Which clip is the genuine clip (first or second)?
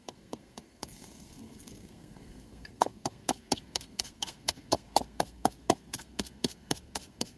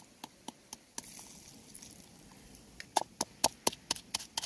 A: second